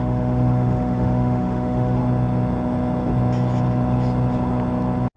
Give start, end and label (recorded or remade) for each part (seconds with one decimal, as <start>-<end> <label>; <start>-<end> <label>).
0.0-2.0 remade; 2.0-5.2 recorded